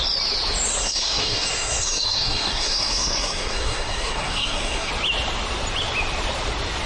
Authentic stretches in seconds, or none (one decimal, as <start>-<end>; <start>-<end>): 0.0-0.8; 4.9-6.9